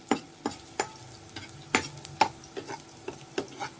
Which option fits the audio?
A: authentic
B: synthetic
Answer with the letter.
A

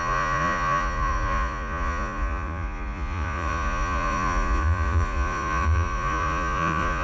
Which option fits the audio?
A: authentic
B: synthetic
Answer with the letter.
B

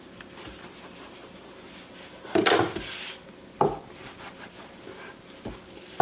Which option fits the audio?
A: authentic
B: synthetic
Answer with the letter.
A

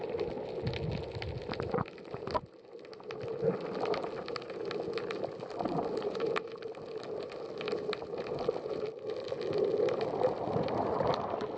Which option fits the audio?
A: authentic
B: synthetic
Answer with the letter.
A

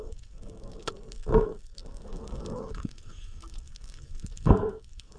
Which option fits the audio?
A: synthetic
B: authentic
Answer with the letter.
A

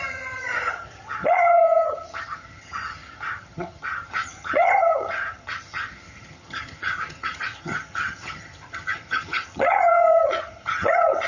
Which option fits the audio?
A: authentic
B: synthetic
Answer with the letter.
B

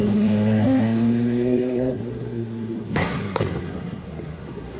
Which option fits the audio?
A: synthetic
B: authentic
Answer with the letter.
A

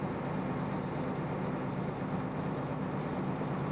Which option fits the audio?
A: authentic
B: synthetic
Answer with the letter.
A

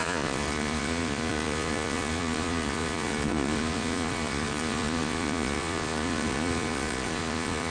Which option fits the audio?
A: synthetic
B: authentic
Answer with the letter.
A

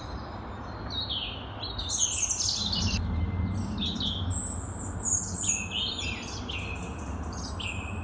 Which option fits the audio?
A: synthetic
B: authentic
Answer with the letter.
B